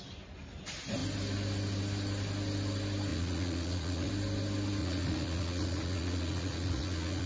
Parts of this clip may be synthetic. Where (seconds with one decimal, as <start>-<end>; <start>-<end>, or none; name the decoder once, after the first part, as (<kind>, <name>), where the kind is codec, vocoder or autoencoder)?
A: 3.1-4.1 (vocoder, Vocos); 4.8-7.3